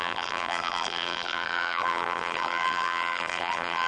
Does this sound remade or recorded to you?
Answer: remade